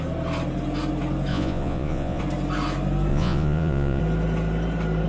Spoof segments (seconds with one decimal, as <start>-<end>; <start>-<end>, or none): 1.3-2.2; 3.1-4.0